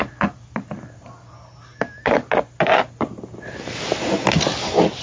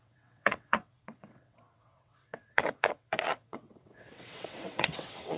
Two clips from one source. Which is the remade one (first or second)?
second